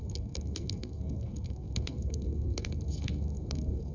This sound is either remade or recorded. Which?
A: remade